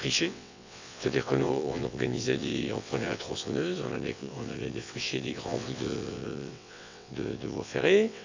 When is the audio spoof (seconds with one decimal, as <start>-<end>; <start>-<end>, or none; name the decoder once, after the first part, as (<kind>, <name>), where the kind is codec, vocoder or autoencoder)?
0.0-8.2 (vocoder, WaveNeXt)